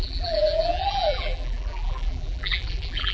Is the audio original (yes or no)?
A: no